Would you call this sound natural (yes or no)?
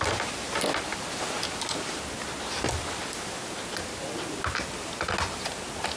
yes